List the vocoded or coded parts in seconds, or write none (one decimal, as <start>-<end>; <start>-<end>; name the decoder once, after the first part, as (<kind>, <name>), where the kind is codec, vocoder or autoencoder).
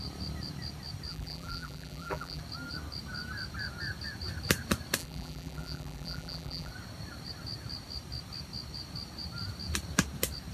1.1-2.4 (vocoder, BigVGAN v2); 5.0-6.7